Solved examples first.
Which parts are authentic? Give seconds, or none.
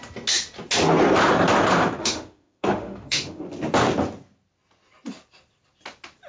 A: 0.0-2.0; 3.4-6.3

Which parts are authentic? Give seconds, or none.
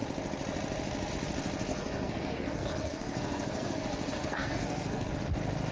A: 0.0-1.7; 5.1-5.7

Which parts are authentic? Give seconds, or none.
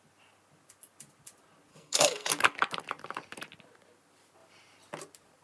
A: 0.0-1.7; 2.3-5.4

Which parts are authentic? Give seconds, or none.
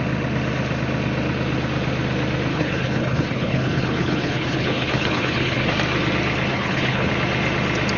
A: 0.0-2.5; 5.7-6.5; 7.1-8.0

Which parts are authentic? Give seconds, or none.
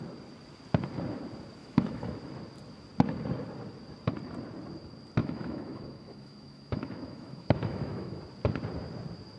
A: 0.0-1.6; 2.1-5.2; 8.2-9.4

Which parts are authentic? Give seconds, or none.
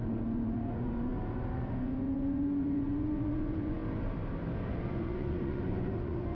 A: 1.1-1.7; 3.8-4.7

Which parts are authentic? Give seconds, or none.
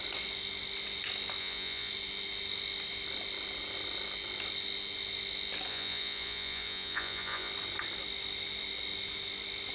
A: 0.0-1.4; 1.9-5.7; 7.5-9.7